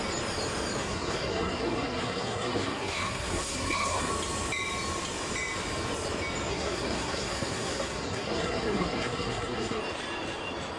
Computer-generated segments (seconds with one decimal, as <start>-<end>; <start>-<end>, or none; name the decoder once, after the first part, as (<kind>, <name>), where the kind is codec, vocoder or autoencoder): 0.8-4.1 (codec, SNAC); 6.5-9.8

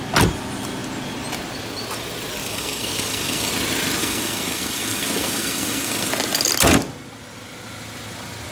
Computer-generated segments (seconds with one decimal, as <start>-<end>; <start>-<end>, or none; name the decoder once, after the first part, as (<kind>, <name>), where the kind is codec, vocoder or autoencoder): 2.4-3.5 (codec, SNAC); 4.0-6.1

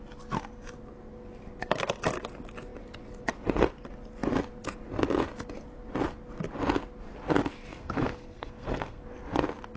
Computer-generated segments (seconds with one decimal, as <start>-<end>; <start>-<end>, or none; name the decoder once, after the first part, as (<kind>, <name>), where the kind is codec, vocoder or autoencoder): 7.7-9.0 (codec, SNAC)

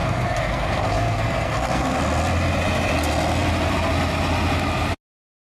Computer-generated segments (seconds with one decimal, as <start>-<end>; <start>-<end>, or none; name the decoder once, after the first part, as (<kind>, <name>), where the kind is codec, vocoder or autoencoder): 0.0-2.0 (codec, SNAC)

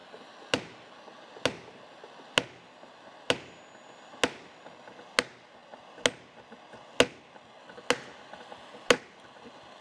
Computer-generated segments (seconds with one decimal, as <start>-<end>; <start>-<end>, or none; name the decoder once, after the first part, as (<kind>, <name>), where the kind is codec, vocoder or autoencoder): none

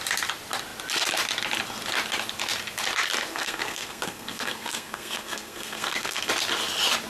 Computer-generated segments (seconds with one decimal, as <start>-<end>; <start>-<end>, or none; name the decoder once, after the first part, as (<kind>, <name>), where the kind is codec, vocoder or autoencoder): 3.3-6.3 (codec, SNAC)

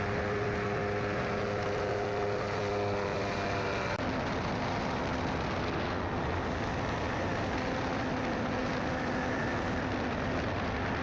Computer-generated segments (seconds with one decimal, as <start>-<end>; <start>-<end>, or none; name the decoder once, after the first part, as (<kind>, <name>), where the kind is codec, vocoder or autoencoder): none

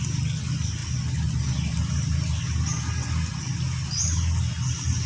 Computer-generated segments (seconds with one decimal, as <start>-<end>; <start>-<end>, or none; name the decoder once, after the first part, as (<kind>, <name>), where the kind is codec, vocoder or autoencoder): none